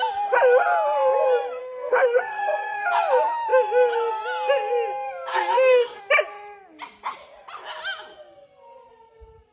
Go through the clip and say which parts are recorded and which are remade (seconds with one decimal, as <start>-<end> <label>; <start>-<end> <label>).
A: 0.0-1.6 recorded; 1.6-2.9 remade; 2.9-5.3 recorded; 5.3-6.0 remade; 6.0-9.5 recorded